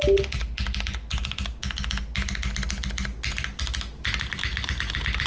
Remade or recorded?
recorded